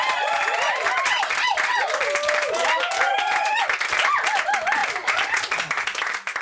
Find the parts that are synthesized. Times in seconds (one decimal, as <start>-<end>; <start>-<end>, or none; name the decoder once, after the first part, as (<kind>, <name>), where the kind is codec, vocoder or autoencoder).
none